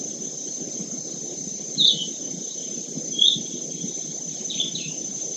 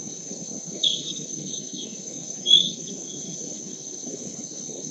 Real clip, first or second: first